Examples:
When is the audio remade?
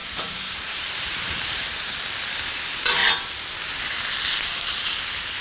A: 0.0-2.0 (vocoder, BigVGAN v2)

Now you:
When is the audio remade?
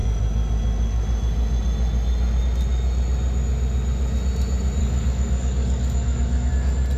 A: 4.8-6.5 (codec, DAC)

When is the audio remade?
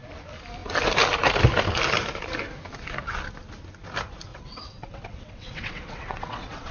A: 4.3-6.7 (vocoder, WaveNeXt)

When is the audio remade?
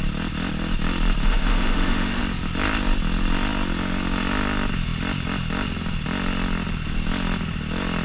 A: 1.2-2.2 (autoencoder, DAC-VAE)